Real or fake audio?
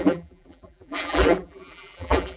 fake